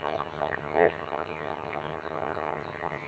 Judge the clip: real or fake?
fake